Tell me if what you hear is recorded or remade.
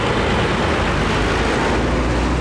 recorded